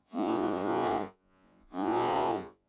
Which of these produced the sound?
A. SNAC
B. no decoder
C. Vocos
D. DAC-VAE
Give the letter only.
C